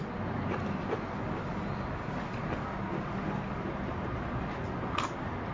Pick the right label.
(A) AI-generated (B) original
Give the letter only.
B